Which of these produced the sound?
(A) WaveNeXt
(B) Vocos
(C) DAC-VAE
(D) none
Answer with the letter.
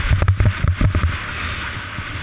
D